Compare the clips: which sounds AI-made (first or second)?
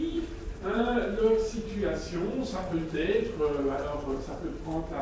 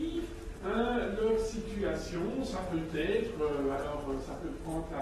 first